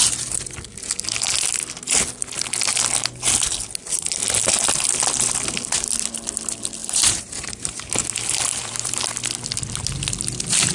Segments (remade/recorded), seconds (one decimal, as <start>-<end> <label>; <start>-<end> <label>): 0.0-6.8 recorded; 6.8-9.1 remade; 9.1-10.7 recorded